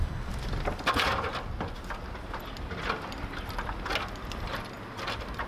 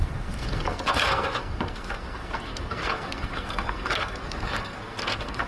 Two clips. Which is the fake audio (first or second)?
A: second